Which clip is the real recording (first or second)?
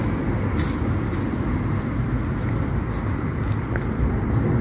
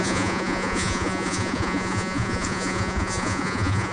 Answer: first